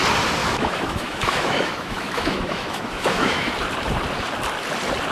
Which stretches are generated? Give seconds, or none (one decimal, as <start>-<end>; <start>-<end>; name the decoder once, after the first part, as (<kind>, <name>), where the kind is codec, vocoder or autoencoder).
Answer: 0.4-3.5 (autoencoder, DAC-VAE)